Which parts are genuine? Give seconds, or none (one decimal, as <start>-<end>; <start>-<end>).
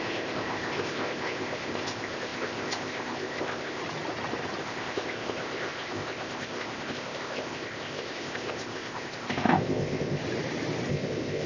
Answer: 3.8-4.6; 10.2-10.9